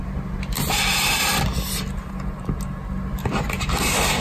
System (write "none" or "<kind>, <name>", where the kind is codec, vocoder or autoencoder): none